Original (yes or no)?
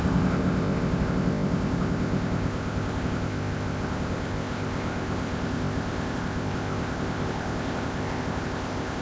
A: no